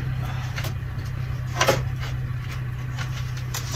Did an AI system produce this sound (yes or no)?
no